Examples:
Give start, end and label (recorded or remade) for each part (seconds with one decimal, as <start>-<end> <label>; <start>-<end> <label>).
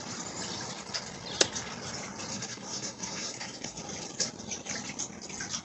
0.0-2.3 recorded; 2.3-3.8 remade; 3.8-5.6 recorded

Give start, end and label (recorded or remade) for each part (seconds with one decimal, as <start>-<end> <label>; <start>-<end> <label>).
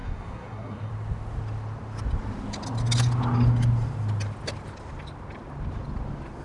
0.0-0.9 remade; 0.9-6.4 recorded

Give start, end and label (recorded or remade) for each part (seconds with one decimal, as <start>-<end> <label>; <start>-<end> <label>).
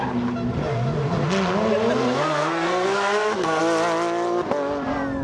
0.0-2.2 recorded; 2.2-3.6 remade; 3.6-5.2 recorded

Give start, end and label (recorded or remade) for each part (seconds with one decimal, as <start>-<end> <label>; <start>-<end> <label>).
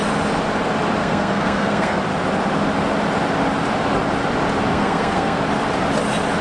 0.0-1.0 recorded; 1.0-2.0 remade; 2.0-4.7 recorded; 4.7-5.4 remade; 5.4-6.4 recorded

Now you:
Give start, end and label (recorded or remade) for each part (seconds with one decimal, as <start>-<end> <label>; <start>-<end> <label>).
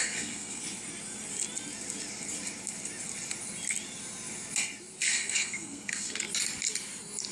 0.0-0.6 remade; 0.6-5.0 recorded; 5.0-6.2 remade; 6.2-7.3 recorded